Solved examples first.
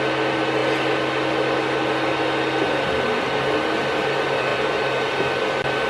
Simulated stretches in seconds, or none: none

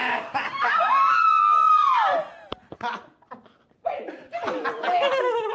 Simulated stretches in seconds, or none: 0.0-2.1 (codec, DAC)

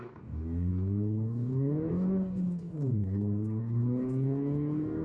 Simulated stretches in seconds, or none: 0.0-5.0 (codec, DAC)

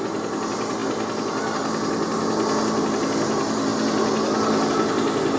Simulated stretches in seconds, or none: none

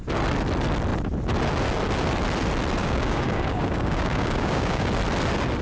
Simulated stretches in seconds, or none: 2.8-4.9 (codec, DAC)